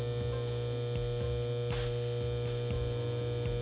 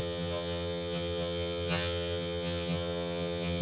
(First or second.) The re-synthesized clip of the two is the second